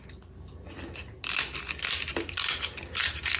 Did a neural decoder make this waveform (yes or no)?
no